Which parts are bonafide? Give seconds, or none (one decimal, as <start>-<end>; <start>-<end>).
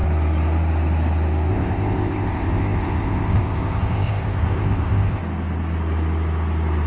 0.0-1.5; 5.2-6.9